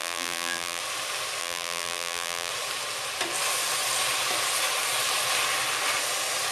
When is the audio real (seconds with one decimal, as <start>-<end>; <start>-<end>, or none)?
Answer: 0.8-1.4; 2.5-6.5